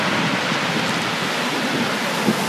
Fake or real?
real